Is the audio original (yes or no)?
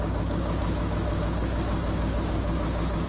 no